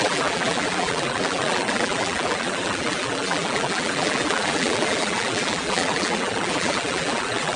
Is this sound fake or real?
fake